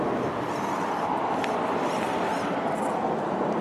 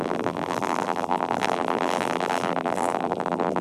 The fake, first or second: second